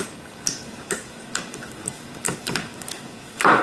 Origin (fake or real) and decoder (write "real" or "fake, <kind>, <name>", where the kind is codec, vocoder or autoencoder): fake, codec, DAC